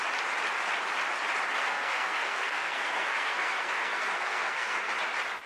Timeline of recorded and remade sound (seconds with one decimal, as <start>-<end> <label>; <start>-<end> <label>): 0.0-1.6 recorded; 1.6-4.9 remade; 4.9-5.5 recorded